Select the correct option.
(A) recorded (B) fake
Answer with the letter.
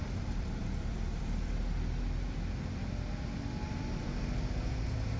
B